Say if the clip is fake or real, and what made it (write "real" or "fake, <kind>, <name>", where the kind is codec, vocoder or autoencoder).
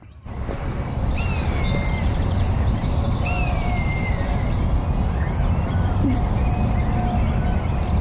real